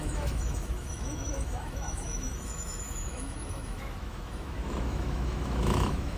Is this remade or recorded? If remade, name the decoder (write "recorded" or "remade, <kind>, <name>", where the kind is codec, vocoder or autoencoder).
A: remade, autoencoder, DAC-VAE